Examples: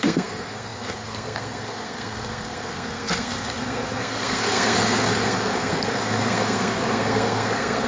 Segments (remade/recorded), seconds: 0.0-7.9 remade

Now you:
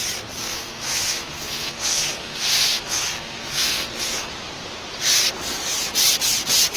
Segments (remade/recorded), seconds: 0.0-0.4 recorded; 0.4-4.3 remade; 4.3-6.8 recorded

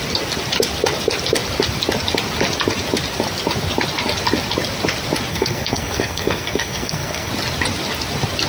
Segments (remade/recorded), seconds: 0.0-5.3 recorded; 5.3-7.3 remade; 7.3-8.5 recorded